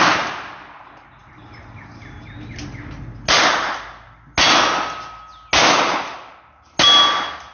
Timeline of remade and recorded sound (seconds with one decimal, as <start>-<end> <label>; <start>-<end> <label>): 0.0-7.5 recorded

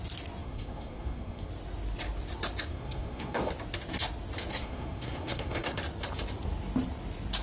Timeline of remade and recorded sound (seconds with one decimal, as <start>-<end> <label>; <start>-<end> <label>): 0.0-0.4 recorded; 0.4-1.5 remade; 1.5-2.7 recorded; 2.7-3.5 remade; 3.5-4.5 recorded; 4.5-5.8 remade; 5.8-7.4 recorded

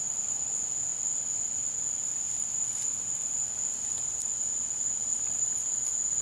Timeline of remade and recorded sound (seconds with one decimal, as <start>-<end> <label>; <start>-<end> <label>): 0.0-6.2 recorded

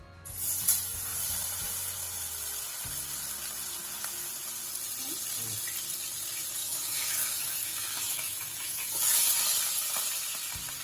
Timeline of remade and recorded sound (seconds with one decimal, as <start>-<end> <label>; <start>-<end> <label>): 0.0-6.6 recorded; 6.6-8.9 remade; 8.9-10.8 recorded